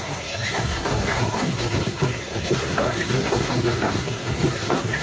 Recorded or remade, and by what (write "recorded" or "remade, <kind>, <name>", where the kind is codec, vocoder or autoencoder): remade, codec, SNAC